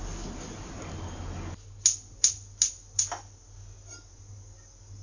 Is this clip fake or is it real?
real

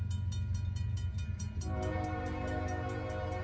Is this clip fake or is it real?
real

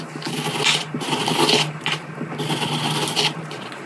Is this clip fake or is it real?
real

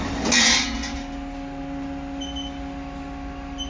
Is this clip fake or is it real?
real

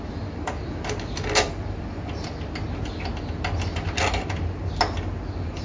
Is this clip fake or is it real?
real